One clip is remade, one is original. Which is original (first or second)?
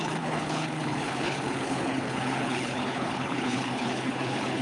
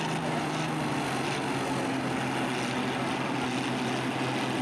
second